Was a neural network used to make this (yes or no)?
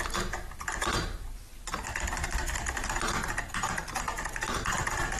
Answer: yes